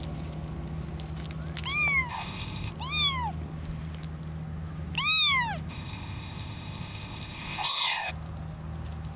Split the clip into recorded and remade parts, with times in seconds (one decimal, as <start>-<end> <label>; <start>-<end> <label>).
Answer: 0.0-2.1 recorded; 2.1-2.7 remade; 2.7-5.7 recorded; 5.7-8.1 remade; 8.1-9.2 recorded